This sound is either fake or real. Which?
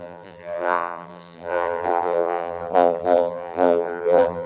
fake